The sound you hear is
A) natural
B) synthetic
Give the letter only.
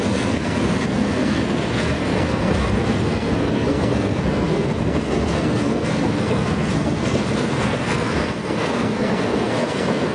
B